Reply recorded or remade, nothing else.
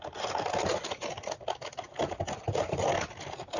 recorded